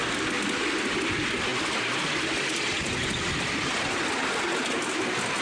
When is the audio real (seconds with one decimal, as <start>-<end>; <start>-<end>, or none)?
0.0-5.4